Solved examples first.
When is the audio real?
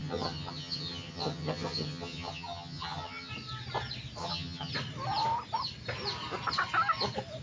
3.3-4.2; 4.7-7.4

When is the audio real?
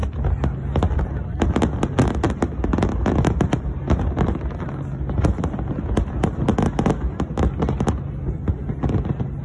0.0-9.4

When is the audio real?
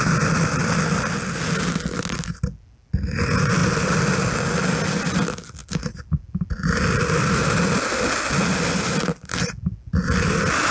0.0-10.7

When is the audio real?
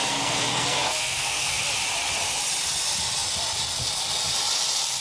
1.6-5.0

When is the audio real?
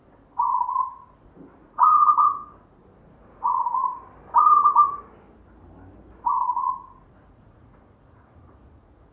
0.0-1.6; 2.8-3.2; 4.0-6.5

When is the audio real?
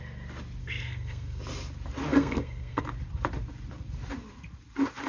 0.0-0.6; 1.4-2.1; 2.8-5.1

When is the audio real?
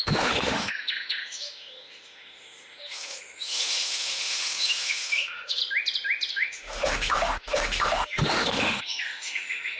5.6-6.3